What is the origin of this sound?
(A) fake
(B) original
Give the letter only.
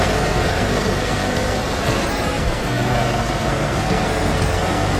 A